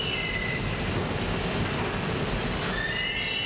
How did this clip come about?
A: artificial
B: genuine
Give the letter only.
B